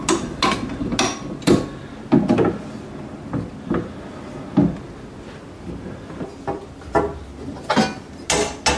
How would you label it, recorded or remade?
recorded